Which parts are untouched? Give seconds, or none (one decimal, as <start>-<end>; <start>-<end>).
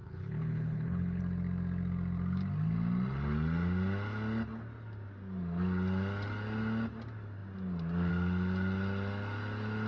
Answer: 1.2-9.9